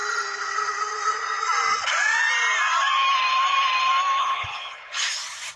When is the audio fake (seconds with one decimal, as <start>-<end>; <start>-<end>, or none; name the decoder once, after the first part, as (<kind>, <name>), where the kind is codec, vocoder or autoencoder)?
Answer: 4.2-5.0 (codec, HILCodec)